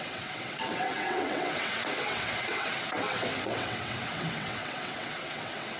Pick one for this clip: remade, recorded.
remade